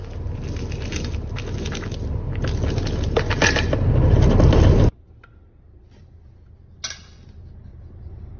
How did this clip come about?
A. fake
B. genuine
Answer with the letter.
B